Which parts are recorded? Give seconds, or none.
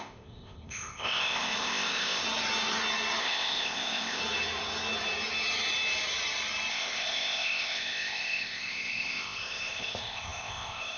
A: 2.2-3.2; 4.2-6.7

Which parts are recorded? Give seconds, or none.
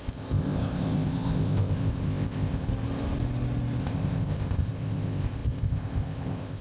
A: 2.7-3.8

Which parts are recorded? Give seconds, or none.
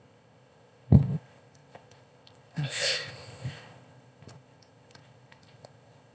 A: none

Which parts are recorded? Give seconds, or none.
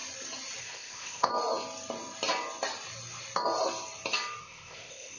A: 0.0-0.6; 1.3-4.4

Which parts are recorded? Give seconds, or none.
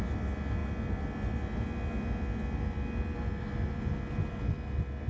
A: 0.0-5.1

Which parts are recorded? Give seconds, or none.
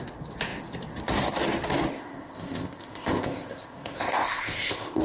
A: 0.0-1.9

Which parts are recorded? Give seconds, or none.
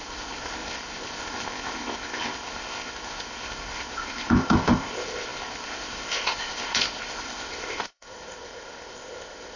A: none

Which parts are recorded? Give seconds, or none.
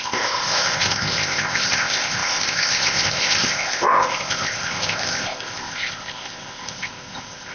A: none